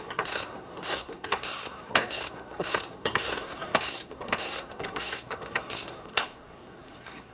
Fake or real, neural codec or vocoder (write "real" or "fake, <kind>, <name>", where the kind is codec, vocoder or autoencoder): fake, codec, SNAC